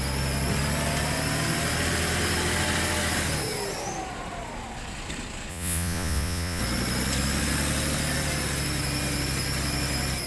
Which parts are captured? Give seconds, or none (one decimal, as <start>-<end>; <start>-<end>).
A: 0.0-5.5; 6.6-10.3